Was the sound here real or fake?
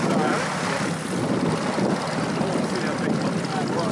real